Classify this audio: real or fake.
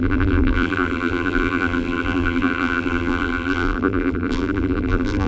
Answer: fake